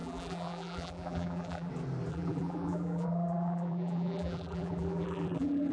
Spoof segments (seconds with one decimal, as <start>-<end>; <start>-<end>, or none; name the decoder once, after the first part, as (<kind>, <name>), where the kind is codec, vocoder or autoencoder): 0.0-1.7 (vocoder, BigVGAN v2); 2.1-5.7